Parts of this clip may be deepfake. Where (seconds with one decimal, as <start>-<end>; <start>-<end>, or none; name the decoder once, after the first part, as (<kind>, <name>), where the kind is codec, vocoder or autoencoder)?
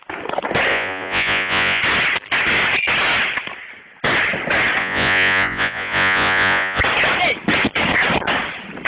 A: 0.7-1.8 (vocoder, Vocos); 4.8-6.8